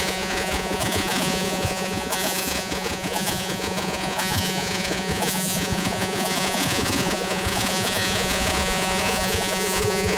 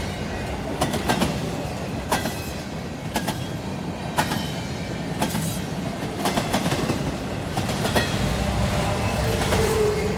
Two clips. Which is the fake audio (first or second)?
first